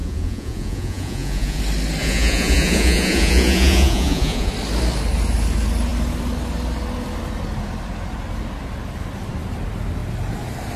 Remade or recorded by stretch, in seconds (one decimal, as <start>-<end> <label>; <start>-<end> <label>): 0.0-1.6 remade; 1.6-2.0 recorded; 2.0-4.5 remade; 4.5-10.8 recorded